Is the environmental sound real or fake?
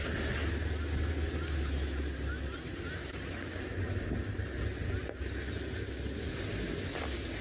real